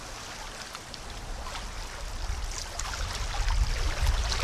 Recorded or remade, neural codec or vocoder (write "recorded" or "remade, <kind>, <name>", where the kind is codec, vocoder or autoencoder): recorded